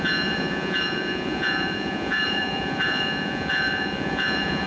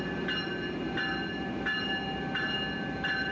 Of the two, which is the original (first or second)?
second